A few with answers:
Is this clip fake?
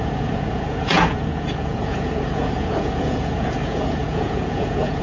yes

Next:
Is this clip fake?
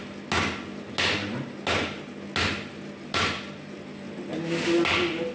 no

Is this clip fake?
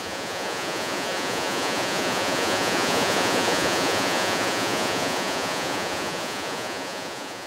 yes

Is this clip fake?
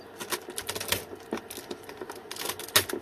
no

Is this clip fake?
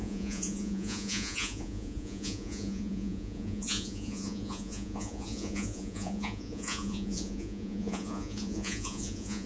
yes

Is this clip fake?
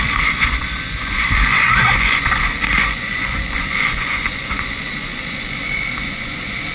yes